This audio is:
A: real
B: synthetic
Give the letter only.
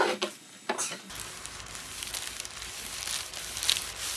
A